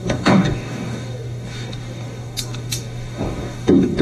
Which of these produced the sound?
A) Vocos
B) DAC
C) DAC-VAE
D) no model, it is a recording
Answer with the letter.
B